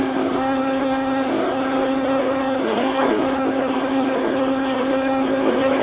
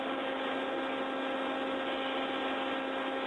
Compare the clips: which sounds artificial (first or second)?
first